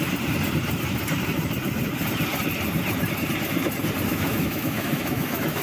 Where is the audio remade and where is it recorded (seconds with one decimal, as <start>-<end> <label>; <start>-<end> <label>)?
0.0-4.1 recorded; 4.1-5.6 remade